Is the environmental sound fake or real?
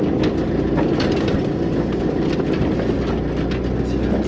real